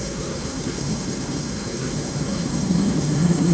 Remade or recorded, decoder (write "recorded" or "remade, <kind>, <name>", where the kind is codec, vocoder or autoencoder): remade, codec, SNAC